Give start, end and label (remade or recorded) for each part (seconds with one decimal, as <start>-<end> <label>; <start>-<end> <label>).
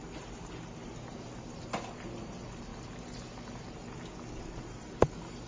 0.0-5.5 recorded